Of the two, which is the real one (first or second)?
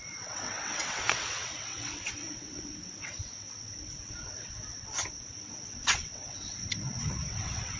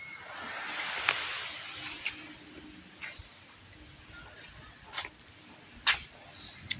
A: second